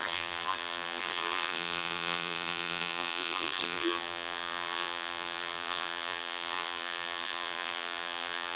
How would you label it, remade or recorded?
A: remade